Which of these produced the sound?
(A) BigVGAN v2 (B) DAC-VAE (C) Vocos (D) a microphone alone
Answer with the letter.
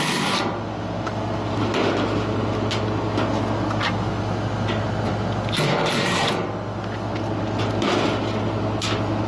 D